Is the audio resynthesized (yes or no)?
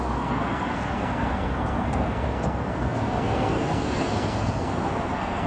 yes